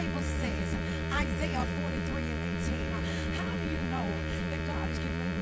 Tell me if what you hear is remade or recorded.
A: remade